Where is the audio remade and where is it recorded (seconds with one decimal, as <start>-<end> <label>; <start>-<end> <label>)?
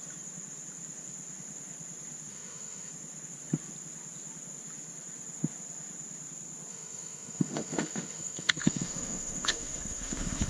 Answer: 0.0-2.3 recorded; 2.3-2.9 remade; 2.9-6.7 recorded; 6.7-10.5 remade